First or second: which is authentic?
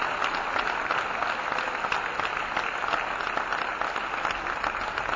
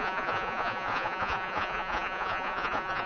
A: first